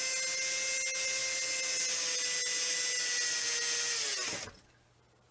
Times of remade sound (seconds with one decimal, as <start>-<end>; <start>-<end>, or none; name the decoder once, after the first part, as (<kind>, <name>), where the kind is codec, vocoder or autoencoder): none